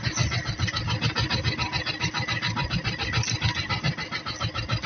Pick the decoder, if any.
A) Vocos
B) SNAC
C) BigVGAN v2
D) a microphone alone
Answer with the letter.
D